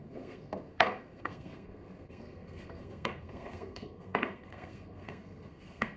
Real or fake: fake